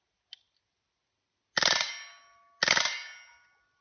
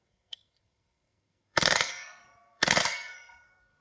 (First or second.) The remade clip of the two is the second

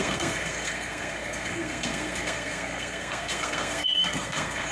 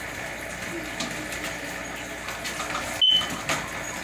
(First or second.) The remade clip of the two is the first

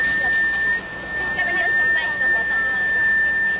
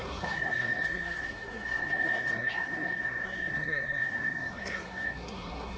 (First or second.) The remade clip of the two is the second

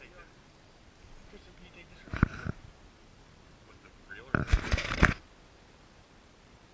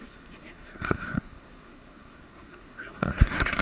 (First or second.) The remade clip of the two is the second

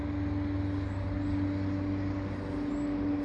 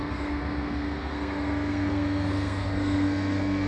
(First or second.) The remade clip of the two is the second